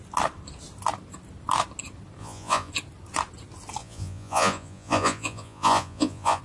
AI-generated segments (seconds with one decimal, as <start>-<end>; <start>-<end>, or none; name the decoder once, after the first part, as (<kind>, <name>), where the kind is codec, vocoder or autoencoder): 2.2-2.7 (vocoder, Vocos); 3.8-6.4